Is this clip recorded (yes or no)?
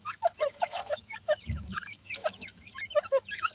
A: no